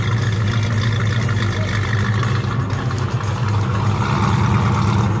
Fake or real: real